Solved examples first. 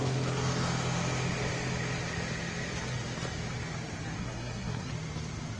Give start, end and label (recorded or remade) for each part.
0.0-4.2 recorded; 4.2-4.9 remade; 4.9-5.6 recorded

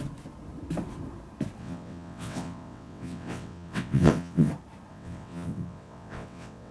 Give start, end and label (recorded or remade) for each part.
0.0-1.6 recorded; 1.6-4.5 remade; 4.5-4.9 recorded; 4.9-6.7 remade

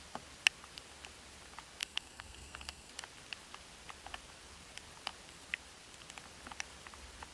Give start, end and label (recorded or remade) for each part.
0.0-1.8 recorded; 1.8-2.9 remade; 2.9-7.3 recorded

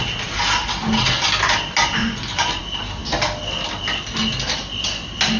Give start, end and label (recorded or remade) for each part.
0.0-2.0 recorded; 2.0-2.6 remade; 2.6-5.4 recorded